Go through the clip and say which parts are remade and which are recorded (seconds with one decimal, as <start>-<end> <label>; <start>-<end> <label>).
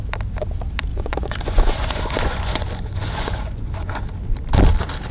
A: 0.0-0.9 recorded; 0.9-4.0 remade; 4.0-5.1 recorded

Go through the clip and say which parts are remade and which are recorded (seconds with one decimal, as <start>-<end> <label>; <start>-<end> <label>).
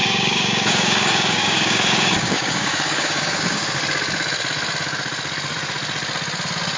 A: 0.0-3.8 remade; 3.8-6.8 recorded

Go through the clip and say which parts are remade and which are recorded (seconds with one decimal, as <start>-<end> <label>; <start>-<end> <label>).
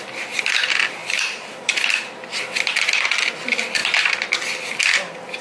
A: 0.0-1.0 recorded; 1.0-1.5 remade; 1.5-3.8 recorded; 3.8-4.3 remade; 4.3-5.4 recorded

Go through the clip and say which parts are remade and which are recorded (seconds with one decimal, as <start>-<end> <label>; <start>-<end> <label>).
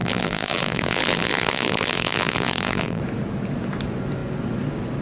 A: 0.0-3.0 remade; 3.0-5.0 recorded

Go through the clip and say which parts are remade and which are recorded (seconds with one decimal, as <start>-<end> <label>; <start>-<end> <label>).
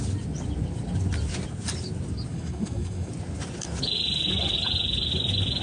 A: 0.0-2.3 recorded; 2.3-3.1 remade; 3.1-5.6 recorded